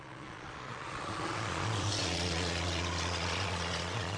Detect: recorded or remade remade